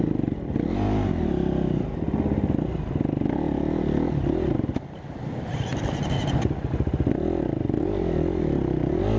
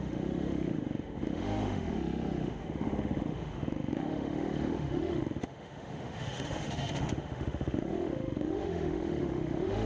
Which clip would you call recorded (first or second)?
first